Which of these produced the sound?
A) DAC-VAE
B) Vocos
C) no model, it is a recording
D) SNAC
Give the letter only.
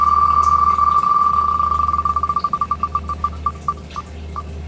C